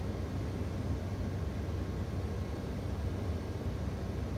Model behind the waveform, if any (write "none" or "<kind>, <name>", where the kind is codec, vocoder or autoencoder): none